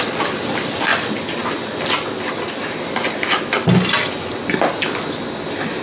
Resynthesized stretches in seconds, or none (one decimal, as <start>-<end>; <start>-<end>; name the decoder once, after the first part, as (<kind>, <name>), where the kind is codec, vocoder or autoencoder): none